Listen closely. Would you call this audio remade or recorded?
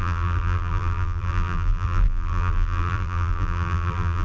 remade